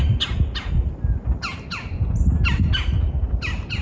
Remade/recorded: recorded